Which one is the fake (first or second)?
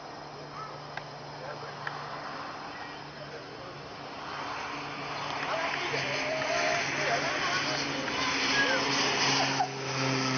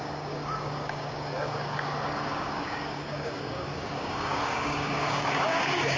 second